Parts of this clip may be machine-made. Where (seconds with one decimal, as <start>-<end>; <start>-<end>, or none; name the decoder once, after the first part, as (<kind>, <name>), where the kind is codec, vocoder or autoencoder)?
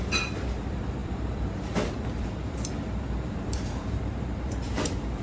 0.0-5.2 (vocoder, BigVGAN v2)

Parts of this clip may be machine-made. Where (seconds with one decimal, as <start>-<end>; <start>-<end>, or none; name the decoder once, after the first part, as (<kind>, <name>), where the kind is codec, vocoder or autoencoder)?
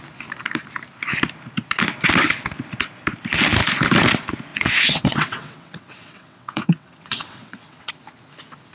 4.5-7.9 (vocoder, WaveNeXt)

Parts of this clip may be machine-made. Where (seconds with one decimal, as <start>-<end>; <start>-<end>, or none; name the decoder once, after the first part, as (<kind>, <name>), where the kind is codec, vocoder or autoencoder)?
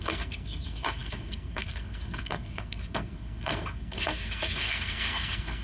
0.0-5.6 (codec, SNAC)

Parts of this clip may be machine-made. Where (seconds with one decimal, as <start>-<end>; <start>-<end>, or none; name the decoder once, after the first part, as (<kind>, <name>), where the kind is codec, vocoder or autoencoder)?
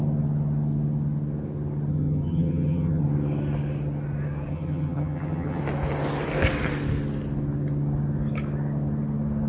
1.9-3.0 (vocoder, HiFi-GAN); 4.5-5.6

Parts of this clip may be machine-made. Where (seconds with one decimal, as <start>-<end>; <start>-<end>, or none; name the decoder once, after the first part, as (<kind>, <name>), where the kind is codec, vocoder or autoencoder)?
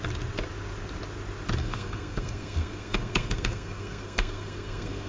1.6-5.1 (codec, SNAC)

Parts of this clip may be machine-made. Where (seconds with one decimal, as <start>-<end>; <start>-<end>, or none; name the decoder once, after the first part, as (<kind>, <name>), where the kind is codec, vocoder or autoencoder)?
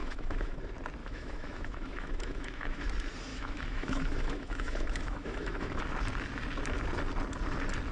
0.0-0.6 (autoencoder, DAC-VAE); 1.0-2.8; 3.3-5.8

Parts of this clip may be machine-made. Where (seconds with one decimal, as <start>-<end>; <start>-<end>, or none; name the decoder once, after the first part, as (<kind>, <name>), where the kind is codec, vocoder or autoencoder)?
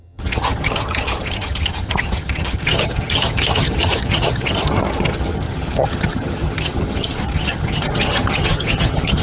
0.0-9.2 (vocoder, HiFi-GAN)